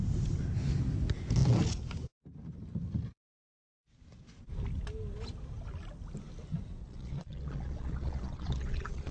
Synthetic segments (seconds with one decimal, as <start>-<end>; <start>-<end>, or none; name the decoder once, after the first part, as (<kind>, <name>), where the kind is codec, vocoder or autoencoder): 6.8-9.1 (vocoder, Vocos)